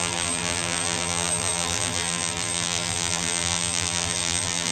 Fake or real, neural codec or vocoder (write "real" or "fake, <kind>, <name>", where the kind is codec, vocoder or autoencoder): fake, vocoder, BigVGAN v2